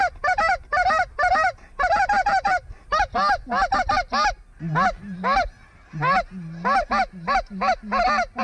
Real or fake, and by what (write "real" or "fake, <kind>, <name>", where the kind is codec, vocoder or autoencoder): real